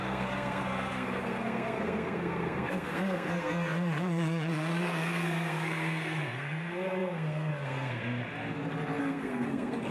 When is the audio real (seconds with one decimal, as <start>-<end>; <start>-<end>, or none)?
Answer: 8.2-9.0